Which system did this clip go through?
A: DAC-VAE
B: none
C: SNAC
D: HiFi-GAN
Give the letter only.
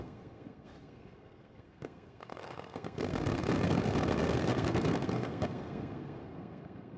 C